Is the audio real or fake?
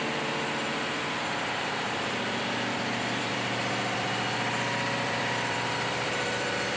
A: fake